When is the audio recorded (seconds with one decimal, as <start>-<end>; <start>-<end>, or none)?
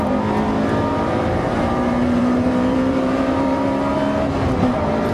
0.0-0.8; 3.9-5.1